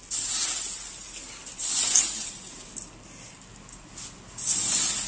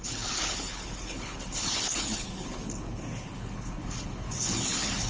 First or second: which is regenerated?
second